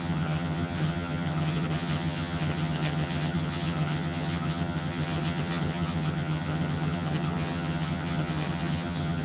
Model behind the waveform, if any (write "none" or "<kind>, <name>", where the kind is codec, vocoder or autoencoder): vocoder, HiFi-GAN